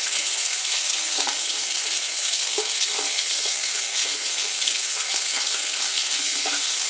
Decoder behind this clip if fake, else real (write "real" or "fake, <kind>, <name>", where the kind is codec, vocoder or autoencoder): fake, codec, SNAC